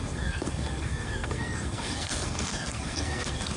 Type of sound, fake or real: fake